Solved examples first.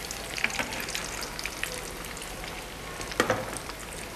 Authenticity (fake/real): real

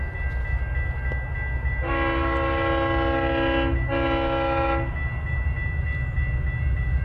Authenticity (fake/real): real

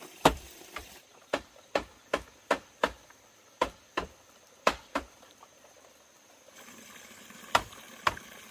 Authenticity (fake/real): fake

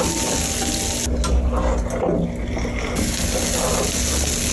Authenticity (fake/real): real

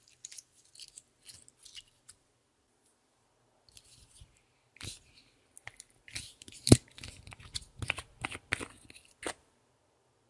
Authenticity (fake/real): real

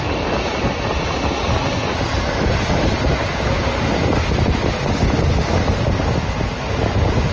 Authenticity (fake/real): real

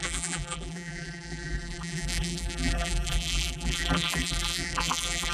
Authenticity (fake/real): fake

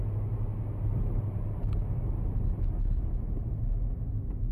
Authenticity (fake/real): real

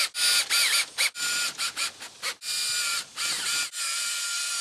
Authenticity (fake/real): real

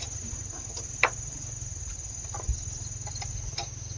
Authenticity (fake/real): real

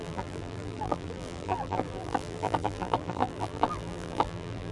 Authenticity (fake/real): fake